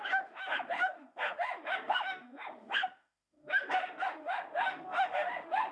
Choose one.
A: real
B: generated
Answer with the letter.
B